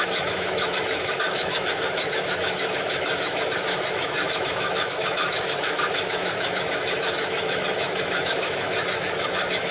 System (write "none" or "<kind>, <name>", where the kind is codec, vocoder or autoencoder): autoencoder, DAC-VAE